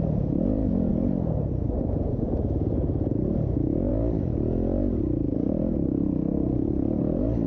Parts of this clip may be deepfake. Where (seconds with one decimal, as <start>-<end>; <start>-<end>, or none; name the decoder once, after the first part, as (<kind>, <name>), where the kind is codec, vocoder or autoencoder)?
0.0-0.9 (vocoder, Vocos); 2.1-3.9